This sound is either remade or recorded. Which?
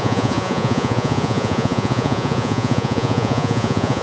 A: remade